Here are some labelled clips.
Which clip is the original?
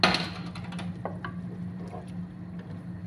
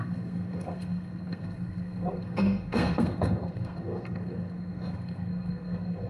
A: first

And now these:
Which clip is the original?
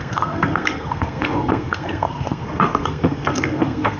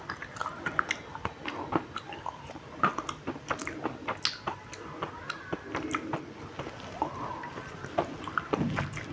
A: second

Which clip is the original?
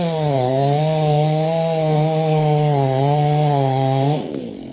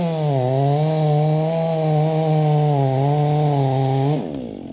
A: second